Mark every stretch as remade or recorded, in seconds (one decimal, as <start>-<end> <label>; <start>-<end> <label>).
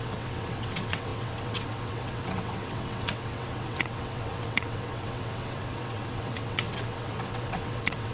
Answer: 0.0-8.1 remade